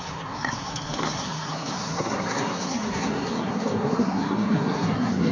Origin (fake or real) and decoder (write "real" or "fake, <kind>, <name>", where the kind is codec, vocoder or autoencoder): fake, codec, SNAC